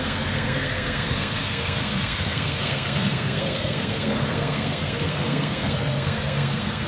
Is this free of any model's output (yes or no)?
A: no